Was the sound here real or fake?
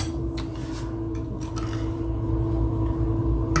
real